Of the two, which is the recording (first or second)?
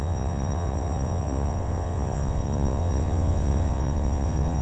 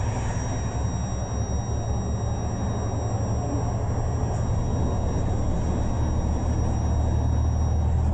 second